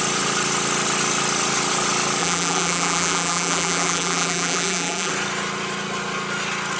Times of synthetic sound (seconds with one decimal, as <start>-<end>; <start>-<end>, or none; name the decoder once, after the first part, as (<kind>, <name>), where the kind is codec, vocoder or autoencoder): 2.2-5.1 (vocoder, BigVGAN v2)